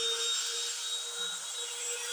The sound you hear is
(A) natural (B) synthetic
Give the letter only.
A